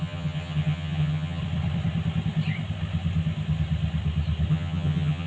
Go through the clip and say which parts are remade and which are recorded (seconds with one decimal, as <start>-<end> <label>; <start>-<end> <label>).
0.0-1.4 remade; 1.4-4.5 recorded; 4.5-5.3 remade